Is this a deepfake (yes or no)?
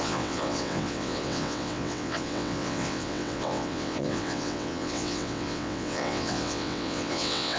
yes